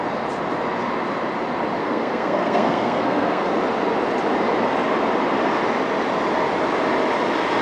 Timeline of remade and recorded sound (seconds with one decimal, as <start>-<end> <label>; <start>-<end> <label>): 0.0-1.8 recorded; 1.8-3.5 remade; 3.5-7.6 recorded